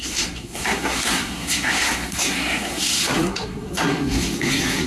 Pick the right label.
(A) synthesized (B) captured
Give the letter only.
A